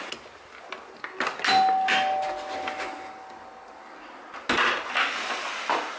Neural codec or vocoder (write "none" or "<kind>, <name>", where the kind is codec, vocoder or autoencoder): none